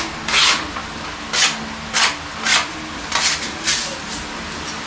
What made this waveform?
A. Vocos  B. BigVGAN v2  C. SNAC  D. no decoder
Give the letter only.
D